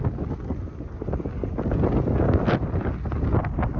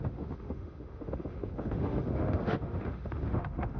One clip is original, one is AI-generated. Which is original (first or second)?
first